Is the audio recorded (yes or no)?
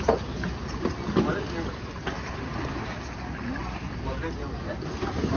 yes